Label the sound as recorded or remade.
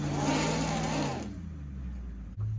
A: recorded